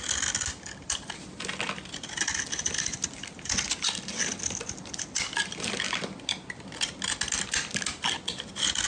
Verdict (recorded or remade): recorded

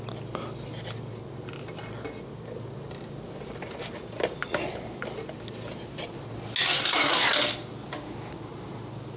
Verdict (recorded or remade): recorded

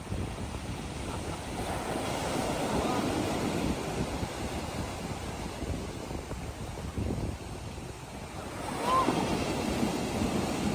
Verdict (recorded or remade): recorded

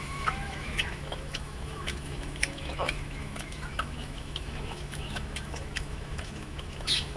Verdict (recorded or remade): remade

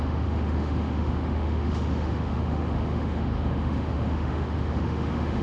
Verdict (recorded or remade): remade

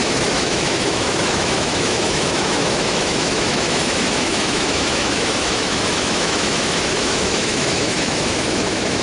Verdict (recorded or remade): remade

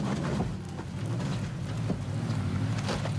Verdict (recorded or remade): recorded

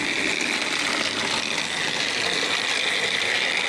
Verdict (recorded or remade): recorded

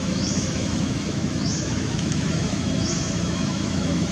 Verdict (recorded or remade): remade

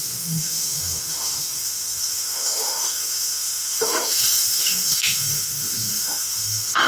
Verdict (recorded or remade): remade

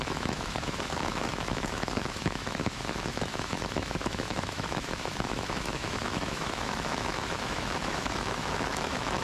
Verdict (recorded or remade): remade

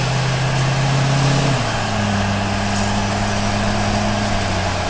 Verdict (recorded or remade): recorded